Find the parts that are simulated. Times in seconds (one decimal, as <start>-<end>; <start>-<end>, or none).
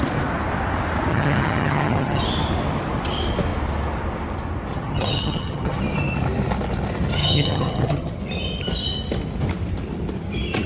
1.1-2.2; 4.7-5.8; 7.2-8.2